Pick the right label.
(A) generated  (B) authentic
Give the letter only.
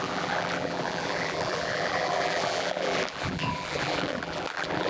A